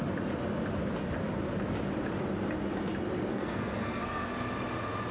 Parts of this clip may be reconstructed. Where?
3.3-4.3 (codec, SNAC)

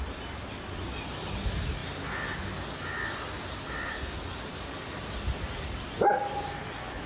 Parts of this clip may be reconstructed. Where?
none

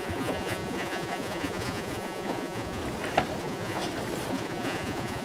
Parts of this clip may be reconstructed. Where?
0.0-2.8 (vocoder, Vocos); 3.4-3.8; 4.3-5.2

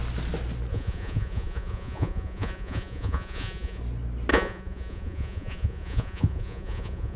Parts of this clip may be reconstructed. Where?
0.7-3.8 (vocoder, Vocos); 4.3-7.2

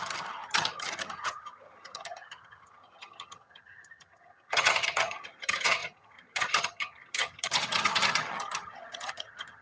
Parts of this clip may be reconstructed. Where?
0.0-9.6 (vocoder, HiFi-GAN)

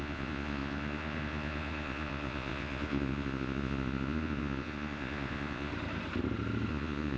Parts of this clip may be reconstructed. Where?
0.0-5.7 (vocoder, Vocos); 6.7-7.2